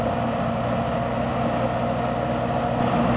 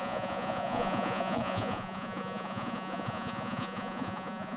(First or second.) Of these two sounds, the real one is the first